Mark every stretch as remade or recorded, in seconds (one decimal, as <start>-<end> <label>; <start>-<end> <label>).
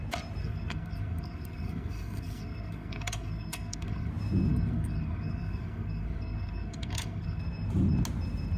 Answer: 0.0-0.4 recorded; 0.4-4.1 remade; 4.1-4.5 recorded; 4.5-7.4 remade; 7.4-8.6 recorded